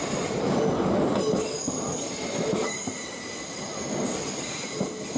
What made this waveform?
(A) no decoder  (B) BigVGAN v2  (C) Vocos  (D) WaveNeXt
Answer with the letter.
A